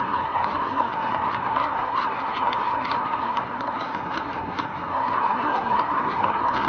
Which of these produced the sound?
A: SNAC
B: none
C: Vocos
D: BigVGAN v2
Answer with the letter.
A